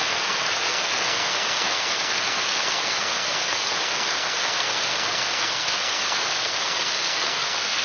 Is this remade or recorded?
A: remade